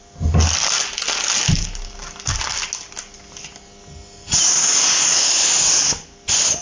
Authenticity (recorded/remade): recorded